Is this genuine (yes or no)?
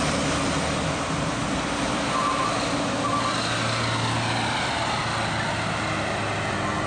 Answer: yes